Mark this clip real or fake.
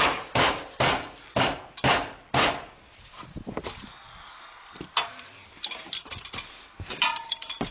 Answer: real